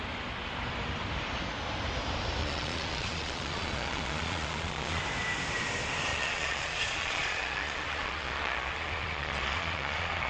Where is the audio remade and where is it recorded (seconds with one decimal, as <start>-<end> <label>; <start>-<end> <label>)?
0.0-2.4 recorded; 2.4-5.0 remade; 5.0-6.1 recorded; 6.1-10.3 remade